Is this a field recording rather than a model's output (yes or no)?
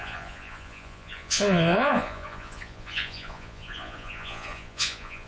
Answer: no